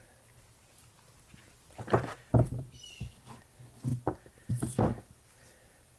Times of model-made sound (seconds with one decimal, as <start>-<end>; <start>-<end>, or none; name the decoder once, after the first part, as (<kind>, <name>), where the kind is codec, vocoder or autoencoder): 0.0-3.9 (vocoder, BigVGAN v2); 4.5-6.0